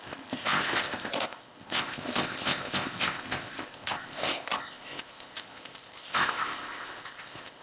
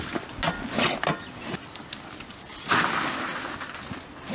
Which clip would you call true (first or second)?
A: second